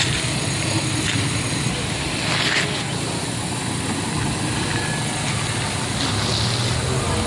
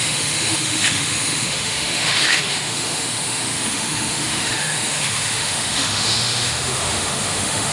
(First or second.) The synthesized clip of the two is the second